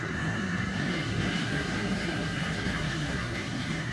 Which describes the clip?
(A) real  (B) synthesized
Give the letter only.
B